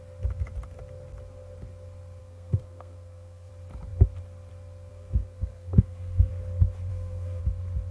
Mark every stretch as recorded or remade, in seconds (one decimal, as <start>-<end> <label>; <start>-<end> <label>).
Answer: 0.0-2.2 recorded; 2.2-3.5 remade; 3.5-4.9 recorded; 4.9-6.3 remade; 6.3-6.9 recorded; 6.9-7.4 remade; 7.4-7.9 recorded